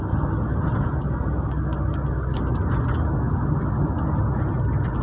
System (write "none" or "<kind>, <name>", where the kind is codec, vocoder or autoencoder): none